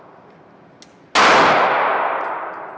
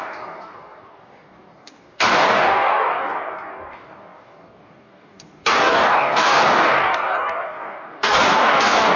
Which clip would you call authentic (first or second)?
first